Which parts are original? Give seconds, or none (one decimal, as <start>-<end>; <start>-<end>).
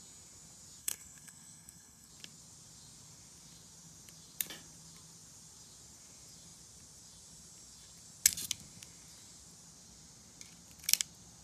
0.0-0.8; 2.1-11.4